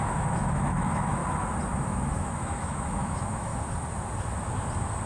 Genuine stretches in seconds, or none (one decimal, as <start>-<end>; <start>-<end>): 1.2-1.8; 3.5-5.1